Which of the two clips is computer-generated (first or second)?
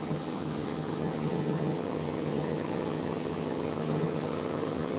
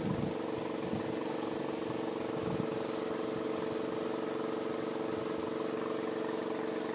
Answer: first